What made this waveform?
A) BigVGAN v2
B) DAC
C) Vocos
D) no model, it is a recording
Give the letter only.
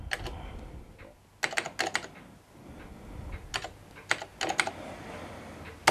D